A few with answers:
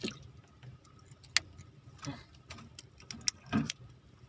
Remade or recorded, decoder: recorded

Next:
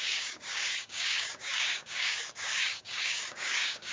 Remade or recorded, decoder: remade, codec, DAC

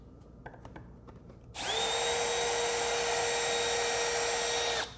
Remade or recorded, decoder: recorded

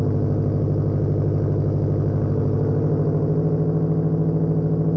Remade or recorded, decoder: recorded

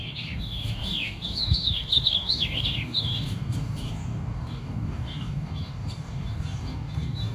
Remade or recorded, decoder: remade, codec, DAC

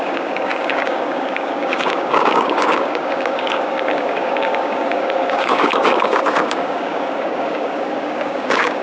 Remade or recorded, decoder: remade, codec, DAC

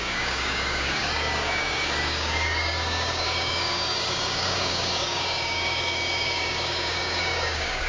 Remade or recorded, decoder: remade, codec, DAC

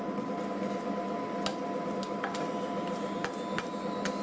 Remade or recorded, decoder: recorded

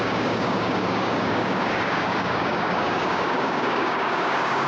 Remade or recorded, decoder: remade, codec, DAC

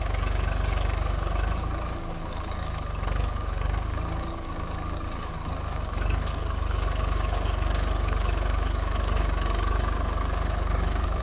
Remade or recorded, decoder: remade, codec, DAC